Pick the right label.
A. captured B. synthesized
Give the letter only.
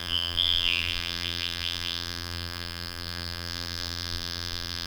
B